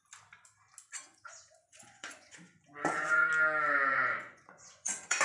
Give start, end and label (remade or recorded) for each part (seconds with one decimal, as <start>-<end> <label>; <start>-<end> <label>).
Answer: 0.0-1.1 recorded; 1.1-3.3 remade; 3.3-3.9 recorded; 3.9-5.2 remade